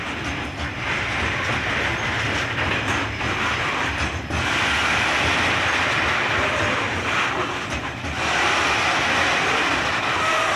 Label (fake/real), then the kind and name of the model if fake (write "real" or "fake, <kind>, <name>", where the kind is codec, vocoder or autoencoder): real